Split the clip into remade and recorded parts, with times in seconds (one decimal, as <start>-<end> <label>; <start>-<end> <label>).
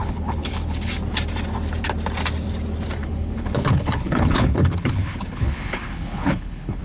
0.0-0.9 remade; 0.9-3.0 recorded; 3.0-6.8 remade